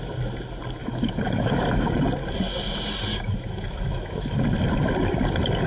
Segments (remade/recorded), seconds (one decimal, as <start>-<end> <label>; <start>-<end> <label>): 0.0-0.8 recorded; 0.8-1.9 remade; 1.9-3.1 recorded; 3.1-4.4 remade; 4.4-5.7 recorded